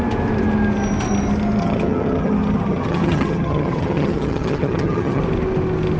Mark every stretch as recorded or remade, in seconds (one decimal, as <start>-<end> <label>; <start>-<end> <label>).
0.0-1.6 recorded; 1.6-5.2 remade; 5.2-6.0 recorded